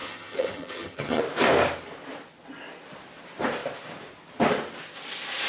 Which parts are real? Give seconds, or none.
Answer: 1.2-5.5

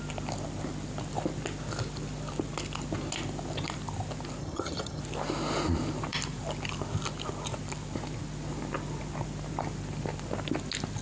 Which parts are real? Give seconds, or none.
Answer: 0.0-4.4; 5.0-11.0